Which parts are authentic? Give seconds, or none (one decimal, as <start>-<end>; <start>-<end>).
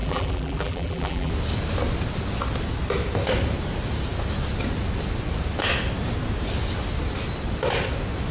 1.3-8.3